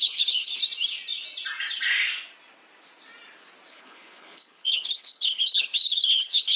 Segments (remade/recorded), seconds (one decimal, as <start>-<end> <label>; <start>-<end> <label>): 0.0-0.6 remade; 0.6-3.7 recorded; 3.7-6.6 remade